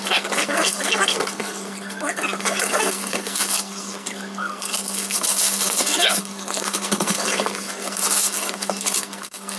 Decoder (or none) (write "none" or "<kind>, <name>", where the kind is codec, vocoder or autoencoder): codec, SNAC